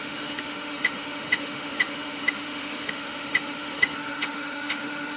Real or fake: fake